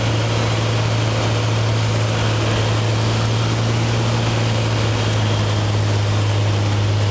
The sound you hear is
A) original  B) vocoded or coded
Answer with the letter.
A